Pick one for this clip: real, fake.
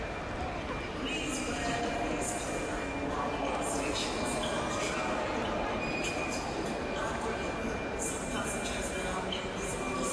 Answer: real